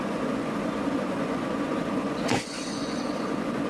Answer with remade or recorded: remade